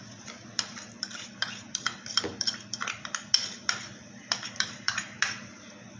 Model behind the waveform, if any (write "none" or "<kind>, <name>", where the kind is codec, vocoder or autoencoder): vocoder, BigVGAN v2